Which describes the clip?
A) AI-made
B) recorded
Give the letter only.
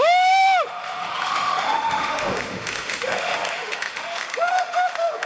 A